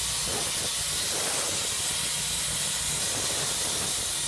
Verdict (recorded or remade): recorded